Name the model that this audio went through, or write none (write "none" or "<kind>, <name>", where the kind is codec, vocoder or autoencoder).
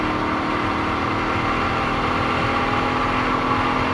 none